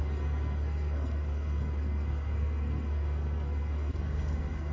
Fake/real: fake